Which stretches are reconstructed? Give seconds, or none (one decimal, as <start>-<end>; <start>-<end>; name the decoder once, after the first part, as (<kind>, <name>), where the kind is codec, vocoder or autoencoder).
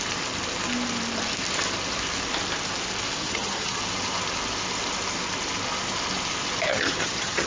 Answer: 3.2-3.8 (vocoder, HiFi-GAN); 6.7-7.5